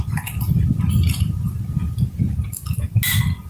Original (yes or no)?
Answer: yes